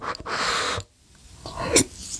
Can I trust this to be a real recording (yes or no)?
yes